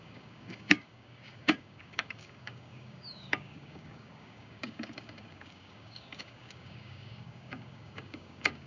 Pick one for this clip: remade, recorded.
remade